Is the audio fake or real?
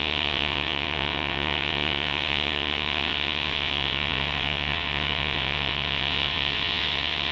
fake